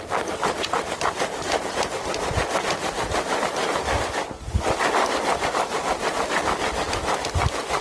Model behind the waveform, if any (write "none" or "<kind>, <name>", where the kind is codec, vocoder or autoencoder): none